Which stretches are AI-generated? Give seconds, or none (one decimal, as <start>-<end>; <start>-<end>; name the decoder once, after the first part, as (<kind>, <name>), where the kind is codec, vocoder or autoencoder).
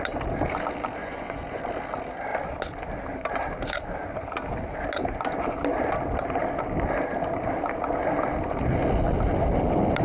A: 1.0-1.6 (vocoder, Vocos)